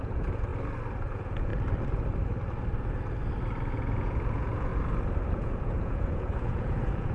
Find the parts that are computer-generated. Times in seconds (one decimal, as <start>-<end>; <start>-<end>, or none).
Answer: 0.0-0.5; 1.1-1.5; 3.7-4.7; 5.3-7.1

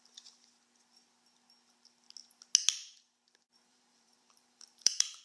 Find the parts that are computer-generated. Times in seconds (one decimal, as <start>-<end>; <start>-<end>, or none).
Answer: 3.7-5.2

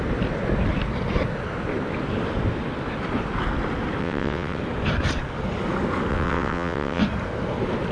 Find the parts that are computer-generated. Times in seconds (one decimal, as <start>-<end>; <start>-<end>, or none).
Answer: 4.0-4.6; 6.1-7.0

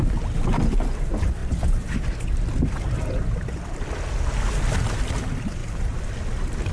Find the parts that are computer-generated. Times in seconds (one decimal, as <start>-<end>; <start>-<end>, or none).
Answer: none

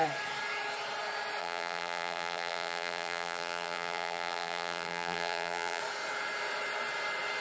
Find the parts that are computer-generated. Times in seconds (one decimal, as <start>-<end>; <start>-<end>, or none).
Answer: 1.4-5.8

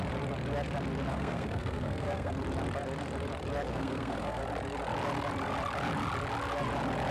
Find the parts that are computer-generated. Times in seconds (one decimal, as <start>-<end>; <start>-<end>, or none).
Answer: 1.1-2.3; 3.7-4.4

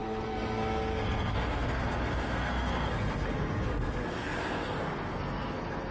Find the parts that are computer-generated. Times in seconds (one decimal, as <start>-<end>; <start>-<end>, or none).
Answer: 0.0-5.9